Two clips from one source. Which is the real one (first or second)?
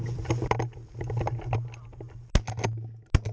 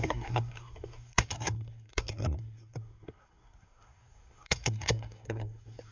first